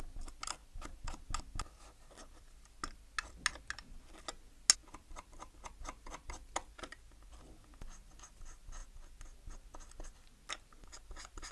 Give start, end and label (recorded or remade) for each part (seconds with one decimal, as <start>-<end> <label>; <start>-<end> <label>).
0.0-11.5 recorded